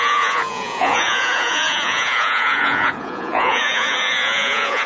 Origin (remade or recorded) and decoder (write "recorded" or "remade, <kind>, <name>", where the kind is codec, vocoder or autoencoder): remade, vocoder, Vocos